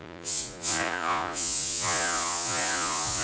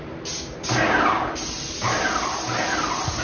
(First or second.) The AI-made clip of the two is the first